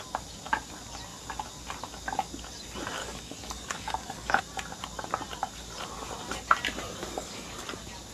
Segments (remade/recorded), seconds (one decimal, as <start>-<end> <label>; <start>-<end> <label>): 0.0-3.0 recorded; 3.0-4.4 remade; 4.4-7.0 recorded; 7.0-7.6 remade; 7.6-8.1 recorded